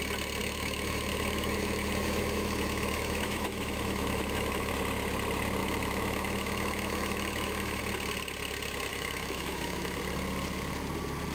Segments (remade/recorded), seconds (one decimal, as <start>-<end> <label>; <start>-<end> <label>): 0.0-0.4 recorded; 0.4-4.7 remade; 4.7-5.6 recorded; 5.6-7.8 remade; 7.8-8.9 recorded; 8.9-10.0 remade; 10.0-11.3 recorded